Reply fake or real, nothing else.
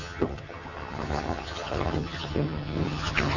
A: fake